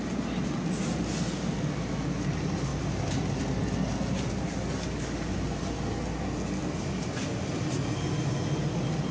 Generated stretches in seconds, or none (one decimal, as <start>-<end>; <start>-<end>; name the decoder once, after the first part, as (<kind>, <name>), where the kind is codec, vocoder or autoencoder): none